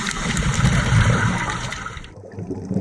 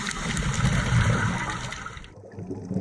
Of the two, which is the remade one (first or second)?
first